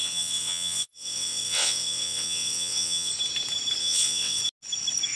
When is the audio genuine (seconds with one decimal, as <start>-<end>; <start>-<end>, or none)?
3.1-3.8; 4.4-5.2